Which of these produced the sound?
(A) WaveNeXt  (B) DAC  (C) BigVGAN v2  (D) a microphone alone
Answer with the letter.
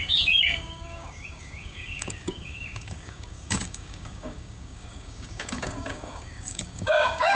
B